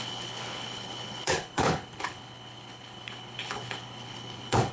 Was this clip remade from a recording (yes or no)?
yes